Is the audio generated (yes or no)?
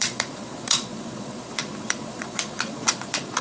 yes